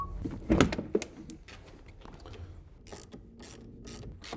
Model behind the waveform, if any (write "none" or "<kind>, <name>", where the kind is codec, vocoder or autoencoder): none